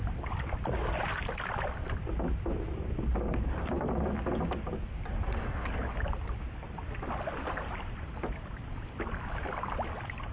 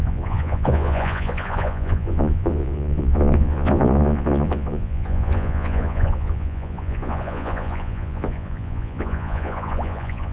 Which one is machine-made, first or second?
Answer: second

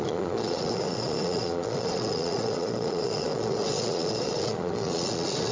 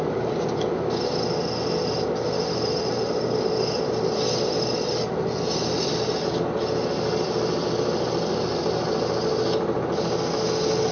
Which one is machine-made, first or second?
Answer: first